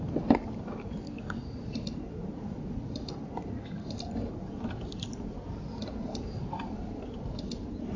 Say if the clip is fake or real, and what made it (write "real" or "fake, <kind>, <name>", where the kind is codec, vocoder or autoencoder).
real